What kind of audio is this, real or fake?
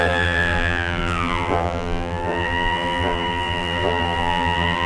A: fake